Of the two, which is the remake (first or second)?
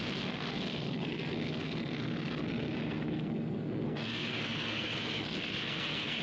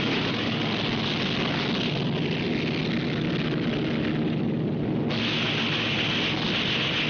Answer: first